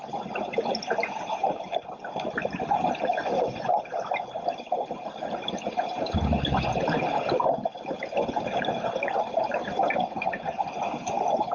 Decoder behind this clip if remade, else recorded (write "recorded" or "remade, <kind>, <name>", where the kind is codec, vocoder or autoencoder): recorded